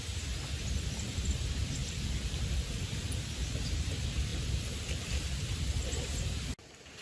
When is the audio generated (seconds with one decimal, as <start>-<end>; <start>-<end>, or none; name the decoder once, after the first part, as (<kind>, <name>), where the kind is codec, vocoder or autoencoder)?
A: 1.8-3.3 (vocoder, BigVGAN v2); 4.3-6.0